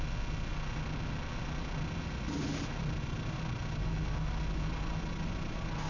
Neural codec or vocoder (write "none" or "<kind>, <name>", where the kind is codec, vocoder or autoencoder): none